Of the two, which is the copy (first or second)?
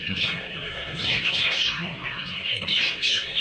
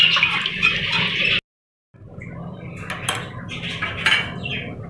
first